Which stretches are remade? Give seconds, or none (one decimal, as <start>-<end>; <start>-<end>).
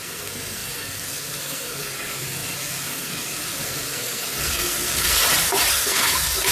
0.0-5.2; 5.7-6.5